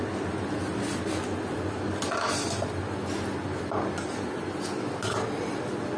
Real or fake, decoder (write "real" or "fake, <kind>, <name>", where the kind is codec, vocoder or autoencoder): real